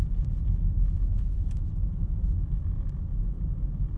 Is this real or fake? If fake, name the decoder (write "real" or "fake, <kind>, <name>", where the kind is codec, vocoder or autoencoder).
real